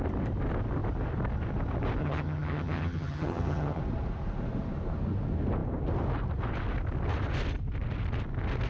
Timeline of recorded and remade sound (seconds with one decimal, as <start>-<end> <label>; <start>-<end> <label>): 0.0-2.0 recorded; 2.0-3.8 remade; 3.8-8.7 recorded